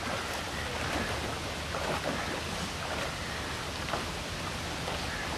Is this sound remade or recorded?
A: recorded